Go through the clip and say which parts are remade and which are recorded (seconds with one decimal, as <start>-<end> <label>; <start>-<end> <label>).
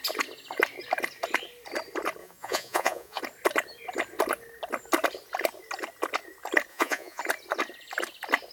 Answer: 0.0-2.2 recorded; 2.2-3.2 remade; 3.2-6.7 recorded; 6.7-7.2 remade; 7.2-8.5 recorded